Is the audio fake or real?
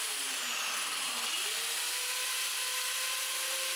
real